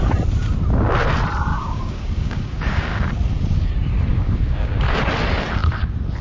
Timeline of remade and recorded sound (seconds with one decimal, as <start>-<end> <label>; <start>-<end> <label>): 0.0-1.5 recorded; 1.5-3.1 remade; 3.1-4.1 recorded; 4.1-5.0 remade; 5.0-6.2 recorded